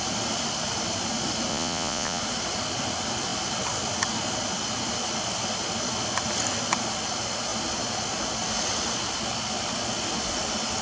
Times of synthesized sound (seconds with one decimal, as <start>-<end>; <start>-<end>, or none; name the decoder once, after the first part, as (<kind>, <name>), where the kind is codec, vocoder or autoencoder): 1.5-2.2 (vocoder, Vocos)